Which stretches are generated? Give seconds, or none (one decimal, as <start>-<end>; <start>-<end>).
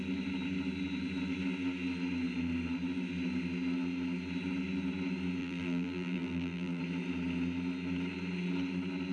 5.4-6.8